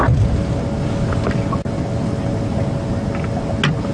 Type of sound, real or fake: real